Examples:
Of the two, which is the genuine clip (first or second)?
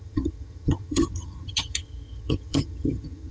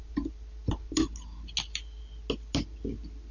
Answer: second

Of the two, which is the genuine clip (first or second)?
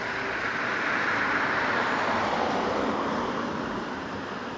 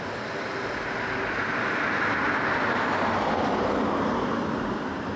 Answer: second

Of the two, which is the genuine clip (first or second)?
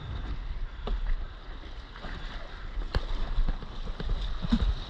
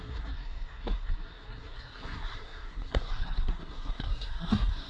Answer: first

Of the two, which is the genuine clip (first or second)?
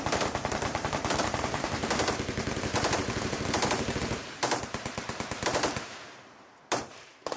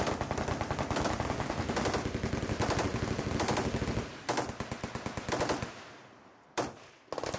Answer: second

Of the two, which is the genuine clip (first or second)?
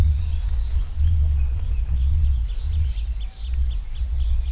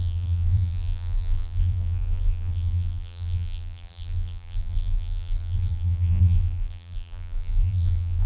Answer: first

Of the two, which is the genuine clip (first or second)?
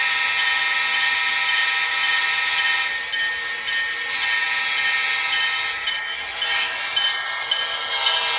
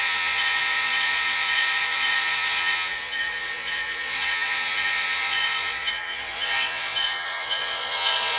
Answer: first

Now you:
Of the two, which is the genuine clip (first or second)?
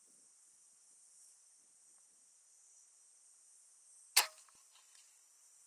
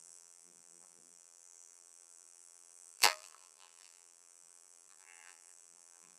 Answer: first